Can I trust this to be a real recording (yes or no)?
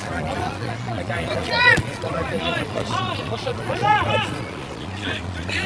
no